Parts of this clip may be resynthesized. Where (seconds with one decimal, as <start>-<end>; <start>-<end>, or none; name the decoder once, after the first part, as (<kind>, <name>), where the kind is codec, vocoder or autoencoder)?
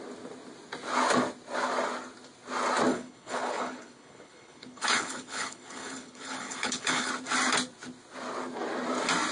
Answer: 2.9-7.1 (codec, HILCodec)